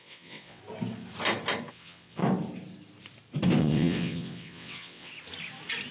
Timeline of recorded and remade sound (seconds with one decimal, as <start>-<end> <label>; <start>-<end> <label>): 0.0-0.6 remade; 0.6-1.7 recorded; 1.7-2.2 remade; 2.2-3.6 recorded; 3.6-5.1 remade; 5.1-5.9 recorded